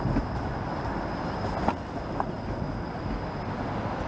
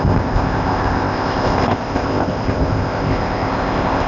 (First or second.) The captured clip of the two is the first